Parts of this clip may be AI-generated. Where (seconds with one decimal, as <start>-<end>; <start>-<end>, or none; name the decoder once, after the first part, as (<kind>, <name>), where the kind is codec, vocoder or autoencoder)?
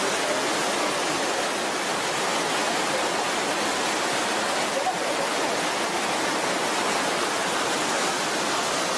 none